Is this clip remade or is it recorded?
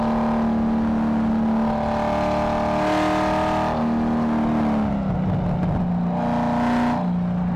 recorded